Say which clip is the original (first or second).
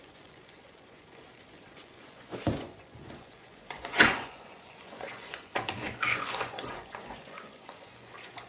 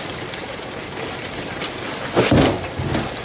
second